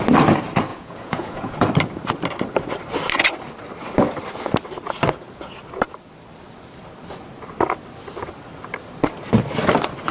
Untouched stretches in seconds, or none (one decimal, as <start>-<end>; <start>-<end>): 0.0-0.7; 1.6-10.1